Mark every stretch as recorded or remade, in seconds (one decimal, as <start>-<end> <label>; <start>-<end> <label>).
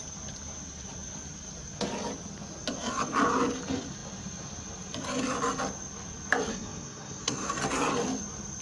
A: 0.0-6.5 recorded; 6.5-7.5 remade; 7.5-8.6 recorded